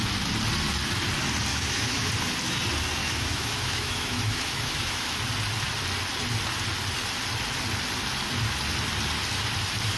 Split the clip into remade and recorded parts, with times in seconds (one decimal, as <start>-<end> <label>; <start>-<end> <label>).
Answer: 0.0-1.5 recorded; 1.5-2.1 remade; 2.1-3.0 recorded; 3.0-5.2 remade; 5.2-10.0 recorded